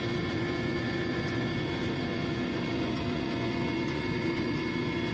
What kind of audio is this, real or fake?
fake